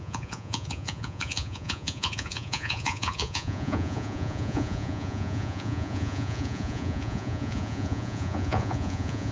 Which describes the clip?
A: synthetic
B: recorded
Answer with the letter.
A